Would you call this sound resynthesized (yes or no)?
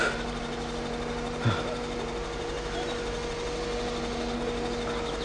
no